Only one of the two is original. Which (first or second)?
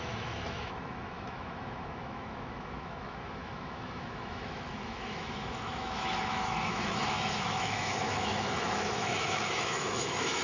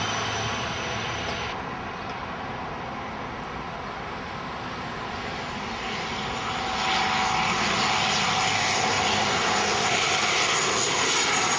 second